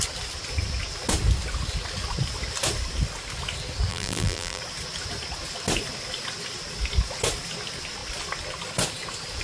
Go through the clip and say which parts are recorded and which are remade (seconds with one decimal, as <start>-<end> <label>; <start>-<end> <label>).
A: 0.0-3.9 recorded; 3.9-4.6 remade; 4.6-9.4 recorded